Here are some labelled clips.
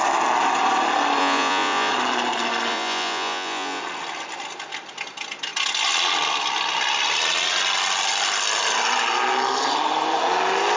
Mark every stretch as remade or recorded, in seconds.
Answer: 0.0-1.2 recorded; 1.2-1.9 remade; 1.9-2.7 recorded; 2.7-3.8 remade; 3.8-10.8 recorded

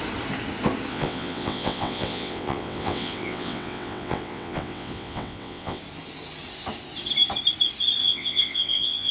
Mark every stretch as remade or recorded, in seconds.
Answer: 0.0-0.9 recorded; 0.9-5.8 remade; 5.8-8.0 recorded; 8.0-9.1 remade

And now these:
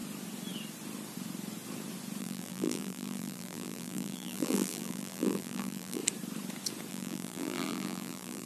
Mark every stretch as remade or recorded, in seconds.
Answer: 0.0-2.2 recorded; 2.2-6.0 remade; 6.0-6.9 recorded; 6.9-8.5 remade